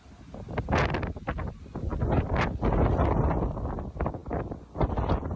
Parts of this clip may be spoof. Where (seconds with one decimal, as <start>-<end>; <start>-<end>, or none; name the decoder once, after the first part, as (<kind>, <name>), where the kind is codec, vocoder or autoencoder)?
none